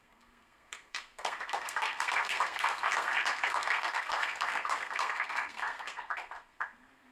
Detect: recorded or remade remade